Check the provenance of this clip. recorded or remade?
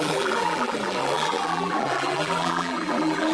remade